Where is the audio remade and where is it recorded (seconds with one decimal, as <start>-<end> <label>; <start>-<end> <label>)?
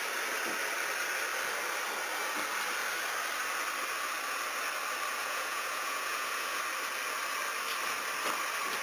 0.0-5.2 recorded; 5.2-6.6 remade; 6.6-8.8 recorded